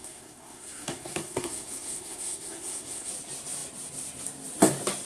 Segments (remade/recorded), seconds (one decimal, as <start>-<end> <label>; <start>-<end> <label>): 0.0-3.1 remade; 3.1-5.1 recorded